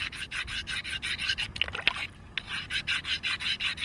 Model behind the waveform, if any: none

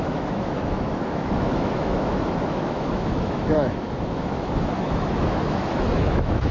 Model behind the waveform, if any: autoencoder, DAC-VAE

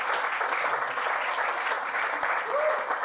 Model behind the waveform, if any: none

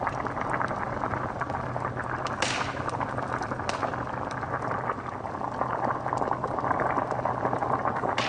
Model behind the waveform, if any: none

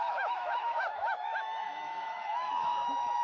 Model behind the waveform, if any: autoencoder, DAC-VAE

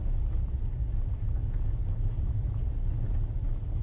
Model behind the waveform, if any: none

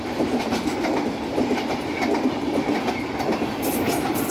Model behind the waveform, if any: none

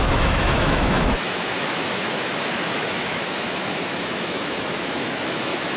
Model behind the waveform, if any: autoencoder, DAC-VAE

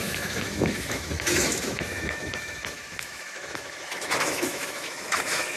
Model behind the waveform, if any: autoencoder, DAC-VAE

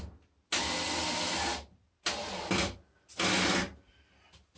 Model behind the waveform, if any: none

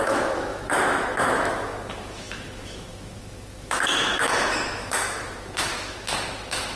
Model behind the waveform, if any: autoencoder, DAC-VAE